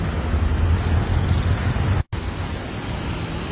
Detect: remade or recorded recorded